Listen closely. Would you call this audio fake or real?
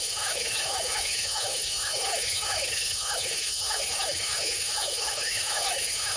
fake